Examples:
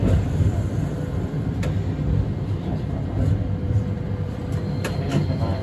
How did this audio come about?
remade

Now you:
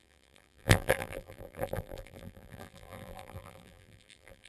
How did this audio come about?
remade